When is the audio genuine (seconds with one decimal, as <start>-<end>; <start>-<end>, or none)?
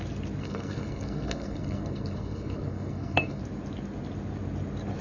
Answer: 0.0-0.4; 3.4-5.0